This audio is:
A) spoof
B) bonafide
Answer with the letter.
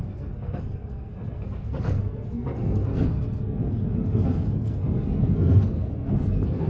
A